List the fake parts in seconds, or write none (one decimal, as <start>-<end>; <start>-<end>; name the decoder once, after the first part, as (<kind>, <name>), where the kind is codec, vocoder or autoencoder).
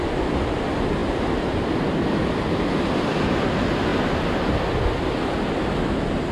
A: none